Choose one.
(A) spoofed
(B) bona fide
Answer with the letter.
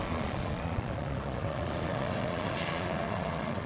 A